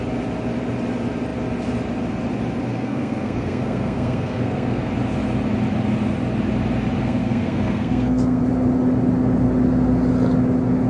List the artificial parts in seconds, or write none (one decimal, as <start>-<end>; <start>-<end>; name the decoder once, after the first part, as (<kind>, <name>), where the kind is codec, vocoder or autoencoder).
2.7-4.9 (codec, SNAC); 7.0-8.4